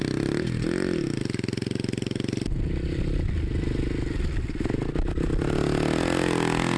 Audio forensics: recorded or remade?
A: recorded